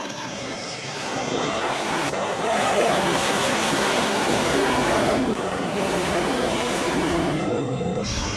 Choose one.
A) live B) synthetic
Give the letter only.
B